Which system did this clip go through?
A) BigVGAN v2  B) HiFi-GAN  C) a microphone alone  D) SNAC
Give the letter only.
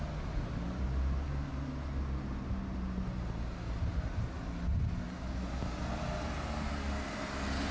C